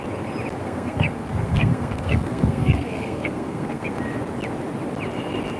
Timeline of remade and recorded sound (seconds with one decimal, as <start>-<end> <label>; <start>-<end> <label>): 0.0-0.6 recorded; 0.6-4.0 remade; 4.0-5.6 recorded